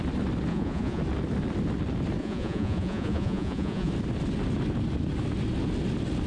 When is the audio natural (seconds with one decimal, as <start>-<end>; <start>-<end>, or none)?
0.0-0.5; 1.0-2.2; 3.9-6.3